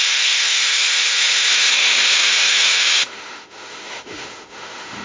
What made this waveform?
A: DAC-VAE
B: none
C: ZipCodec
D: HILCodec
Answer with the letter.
A